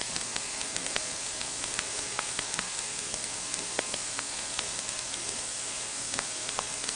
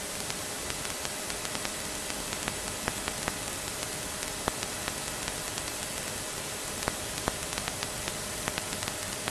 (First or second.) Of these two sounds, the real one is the second